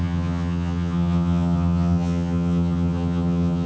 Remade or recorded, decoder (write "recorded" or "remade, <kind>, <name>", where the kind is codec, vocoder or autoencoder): remade, vocoder, HiFi-GAN